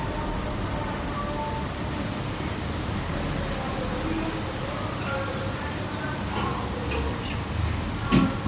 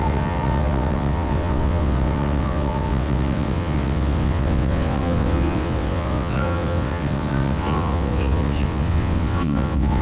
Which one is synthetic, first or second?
second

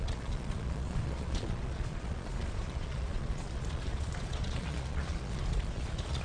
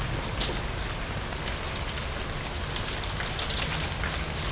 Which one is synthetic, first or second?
first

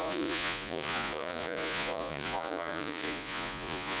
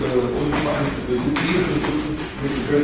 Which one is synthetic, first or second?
first